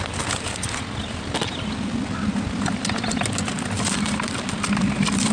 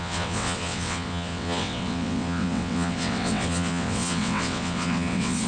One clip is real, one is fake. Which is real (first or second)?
first